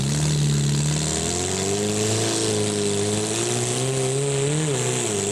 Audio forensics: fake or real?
real